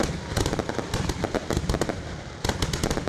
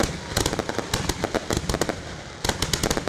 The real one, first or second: second